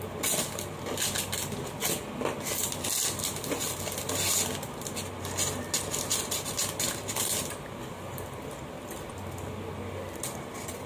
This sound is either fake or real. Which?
real